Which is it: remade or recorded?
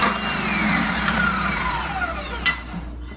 remade